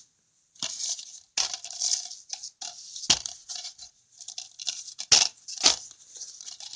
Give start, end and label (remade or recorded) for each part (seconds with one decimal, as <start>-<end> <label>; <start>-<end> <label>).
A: 0.0-3.4 recorded; 3.4-4.0 remade; 4.0-6.8 recorded